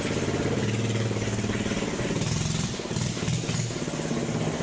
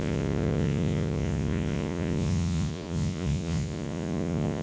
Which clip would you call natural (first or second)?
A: first